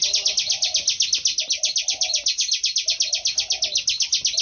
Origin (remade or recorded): recorded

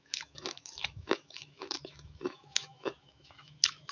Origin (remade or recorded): remade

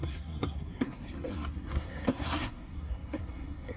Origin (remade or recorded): remade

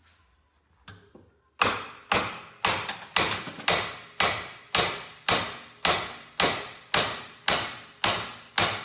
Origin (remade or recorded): recorded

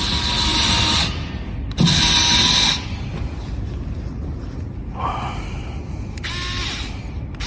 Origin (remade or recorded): recorded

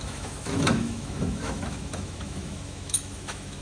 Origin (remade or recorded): remade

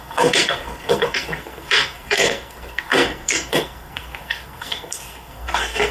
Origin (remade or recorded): remade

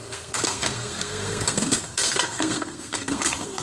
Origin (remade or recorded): remade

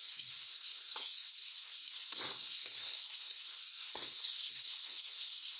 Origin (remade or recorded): remade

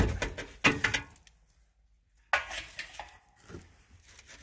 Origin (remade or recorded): recorded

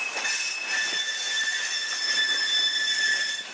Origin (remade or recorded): recorded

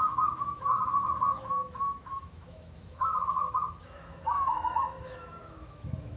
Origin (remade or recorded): remade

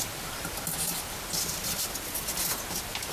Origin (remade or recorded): recorded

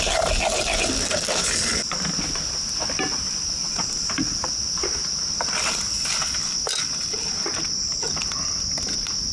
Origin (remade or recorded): recorded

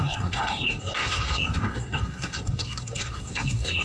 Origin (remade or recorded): remade